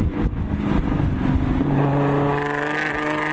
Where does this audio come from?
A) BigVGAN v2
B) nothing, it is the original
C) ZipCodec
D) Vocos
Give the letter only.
B